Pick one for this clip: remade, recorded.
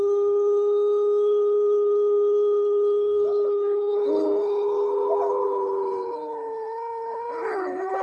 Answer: remade